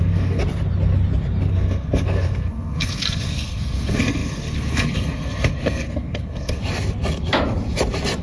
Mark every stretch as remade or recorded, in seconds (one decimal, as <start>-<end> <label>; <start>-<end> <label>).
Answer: 0.0-0.4 remade; 0.4-1.5 recorded; 1.5-6.6 remade; 6.6-8.2 recorded